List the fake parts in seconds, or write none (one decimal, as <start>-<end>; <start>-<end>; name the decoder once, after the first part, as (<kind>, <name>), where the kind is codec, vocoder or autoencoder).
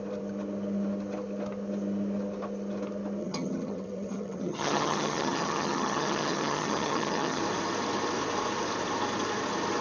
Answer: 3.2-7.4 (vocoder, HiFi-GAN)